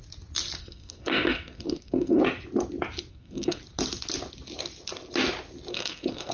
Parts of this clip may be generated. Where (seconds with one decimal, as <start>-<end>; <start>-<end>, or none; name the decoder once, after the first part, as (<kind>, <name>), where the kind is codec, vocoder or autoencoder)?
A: 0.6-2.2 (codec, SNAC); 3.1-3.6; 5.7-6.3